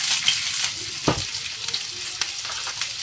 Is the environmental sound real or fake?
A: real